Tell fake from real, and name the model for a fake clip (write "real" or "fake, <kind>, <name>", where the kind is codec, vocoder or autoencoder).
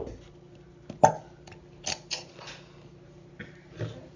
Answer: real